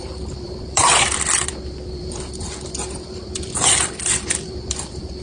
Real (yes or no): no